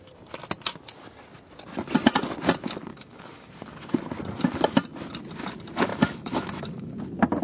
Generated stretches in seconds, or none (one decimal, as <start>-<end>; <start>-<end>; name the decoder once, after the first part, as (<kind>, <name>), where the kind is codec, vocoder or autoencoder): 2.9-3.5 (autoencoder, DAC-VAE); 5.9-6.9